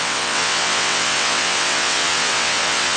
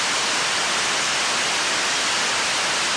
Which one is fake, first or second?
first